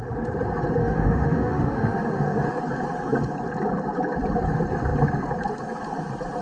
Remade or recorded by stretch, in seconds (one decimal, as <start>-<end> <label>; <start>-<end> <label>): 0.0-0.8 recorded; 0.8-2.6 remade; 2.6-6.4 recorded